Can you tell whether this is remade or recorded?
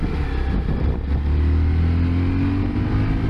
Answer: recorded